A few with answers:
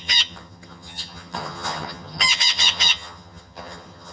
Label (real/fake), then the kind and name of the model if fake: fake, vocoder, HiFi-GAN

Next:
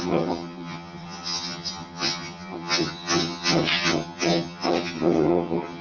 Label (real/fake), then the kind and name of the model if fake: fake, vocoder, HiFi-GAN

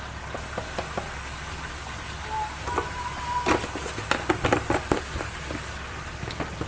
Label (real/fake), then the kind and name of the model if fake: real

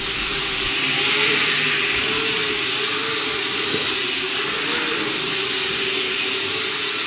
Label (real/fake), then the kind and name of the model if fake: real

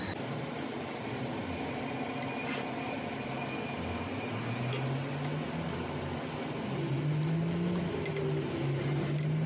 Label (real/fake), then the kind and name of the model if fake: real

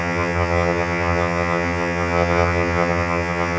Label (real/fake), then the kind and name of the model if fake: fake, vocoder, HiFi-GAN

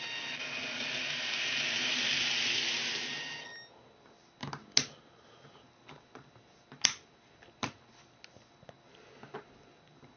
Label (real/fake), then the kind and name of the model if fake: real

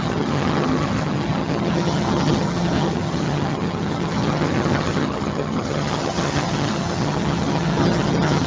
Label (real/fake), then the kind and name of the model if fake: fake, vocoder, HiFi-GAN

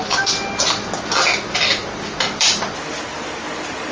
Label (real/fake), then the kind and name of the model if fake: real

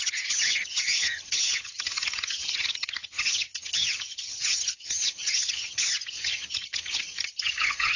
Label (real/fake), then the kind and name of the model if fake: fake, vocoder, HiFi-GAN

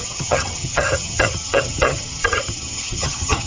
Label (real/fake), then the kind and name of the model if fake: fake, vocoder, HiFi-GAN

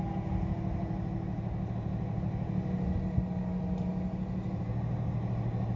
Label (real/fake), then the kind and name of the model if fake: real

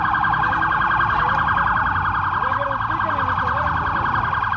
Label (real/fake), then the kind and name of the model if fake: real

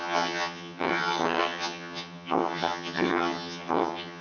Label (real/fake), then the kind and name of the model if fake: fake, vocoder, HiFi-GAN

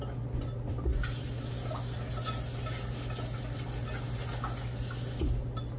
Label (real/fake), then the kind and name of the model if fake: real